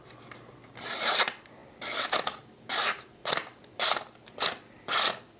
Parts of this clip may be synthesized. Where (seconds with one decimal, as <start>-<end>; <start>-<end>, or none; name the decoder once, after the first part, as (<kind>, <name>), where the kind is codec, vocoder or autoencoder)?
none